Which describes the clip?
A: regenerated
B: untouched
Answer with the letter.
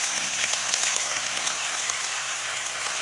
A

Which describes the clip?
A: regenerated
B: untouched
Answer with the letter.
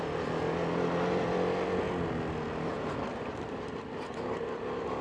B